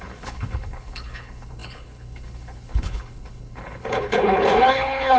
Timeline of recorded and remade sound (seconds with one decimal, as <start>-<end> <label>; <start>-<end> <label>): 0.0-5.2 remade